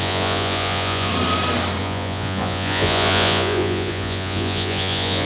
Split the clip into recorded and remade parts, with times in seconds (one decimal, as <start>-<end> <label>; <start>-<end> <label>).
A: 0.0-1.1 remade; 1.1-1.8 recorded; 1.8-5.2 remade